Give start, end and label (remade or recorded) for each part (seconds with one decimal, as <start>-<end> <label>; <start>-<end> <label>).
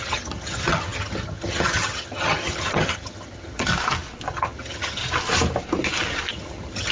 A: 0.0-3.7 remade; 3.7-4.3 recorded; 4.3-5.0 remade; 5.0-6.3 recorded; 6.3-6.9 remade